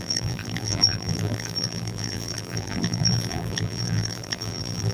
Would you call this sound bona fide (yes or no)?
no